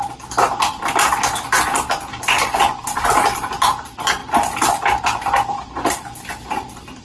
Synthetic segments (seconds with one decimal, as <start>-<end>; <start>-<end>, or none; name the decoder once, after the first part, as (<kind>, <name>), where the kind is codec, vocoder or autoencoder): none